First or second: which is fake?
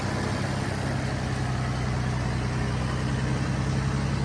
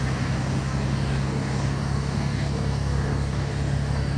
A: second